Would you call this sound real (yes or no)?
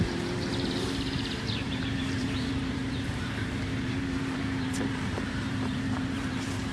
no